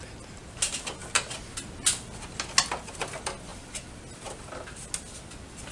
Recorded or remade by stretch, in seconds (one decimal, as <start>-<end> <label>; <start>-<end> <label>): 0.0-3.5 recorded; 3.5-4.9 remade; 4.9-5.7 recorded